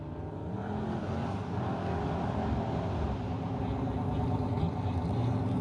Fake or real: real